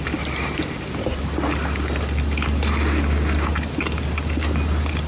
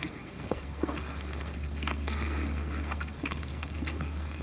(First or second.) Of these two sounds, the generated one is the second